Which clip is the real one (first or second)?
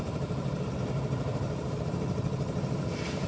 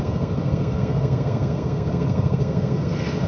first